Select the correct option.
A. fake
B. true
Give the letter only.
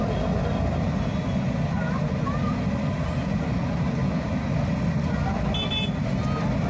B